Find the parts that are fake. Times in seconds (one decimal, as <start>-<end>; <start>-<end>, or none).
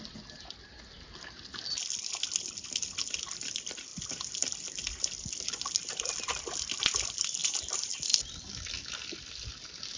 none